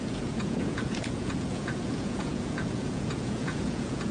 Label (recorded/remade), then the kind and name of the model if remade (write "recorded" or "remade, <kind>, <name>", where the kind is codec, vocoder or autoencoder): remade, vocoder, Vocos